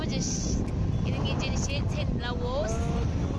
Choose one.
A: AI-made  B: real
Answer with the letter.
B